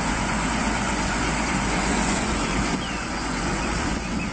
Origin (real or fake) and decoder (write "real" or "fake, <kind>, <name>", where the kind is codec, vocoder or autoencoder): fake, vocoder, Vocos